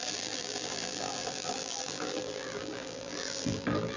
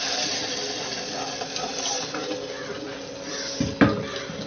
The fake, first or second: first